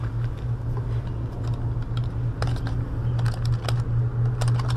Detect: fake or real real